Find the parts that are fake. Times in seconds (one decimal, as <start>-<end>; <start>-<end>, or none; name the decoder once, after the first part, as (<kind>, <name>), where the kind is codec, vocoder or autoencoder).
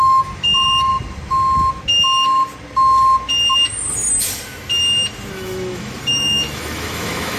0.0-0.9 (autoencoder, DAC-VAE); 5.3-7.4